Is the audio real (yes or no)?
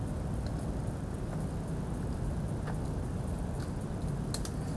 yes